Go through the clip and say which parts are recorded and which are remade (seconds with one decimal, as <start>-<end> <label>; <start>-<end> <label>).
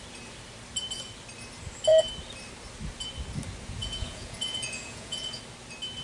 0.0-3.8 recorded; 3.8-5.4 remade; 5.4-6.0 recorded